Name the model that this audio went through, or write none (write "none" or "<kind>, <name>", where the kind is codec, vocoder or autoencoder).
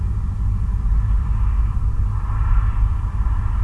none